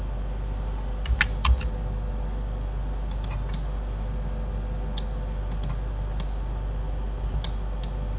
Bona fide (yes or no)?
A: yes